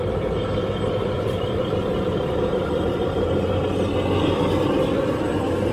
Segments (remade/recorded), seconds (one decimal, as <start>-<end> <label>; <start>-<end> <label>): 0.0-0.6 recorded; 0.6-3.5 remade; 3.5-5.7 recorded